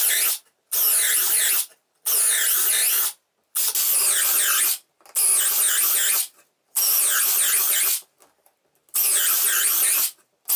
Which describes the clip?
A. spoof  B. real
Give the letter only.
B